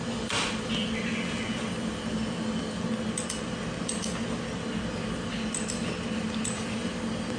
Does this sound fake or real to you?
real